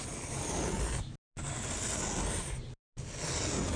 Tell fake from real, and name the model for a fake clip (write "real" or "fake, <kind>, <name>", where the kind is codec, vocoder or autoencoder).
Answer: real